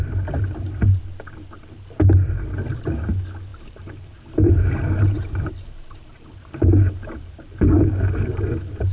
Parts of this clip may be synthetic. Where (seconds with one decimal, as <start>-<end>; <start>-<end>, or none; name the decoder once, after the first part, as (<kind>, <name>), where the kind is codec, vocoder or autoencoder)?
3.5-7.8 (vocoder, BigVGAN v2)